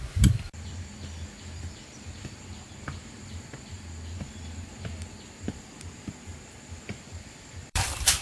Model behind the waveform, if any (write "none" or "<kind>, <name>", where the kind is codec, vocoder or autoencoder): vocoder, BigVGAN v2